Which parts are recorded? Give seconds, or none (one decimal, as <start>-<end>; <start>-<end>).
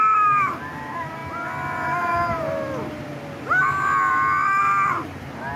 1.2-4.6